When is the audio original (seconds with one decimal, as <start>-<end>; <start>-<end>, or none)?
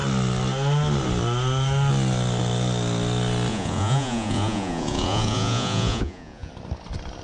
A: 0.0-3.5; 6.5-7.2